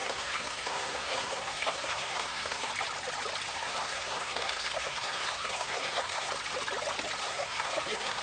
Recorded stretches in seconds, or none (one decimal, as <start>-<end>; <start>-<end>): 2.7-3.5; 6.3-7.2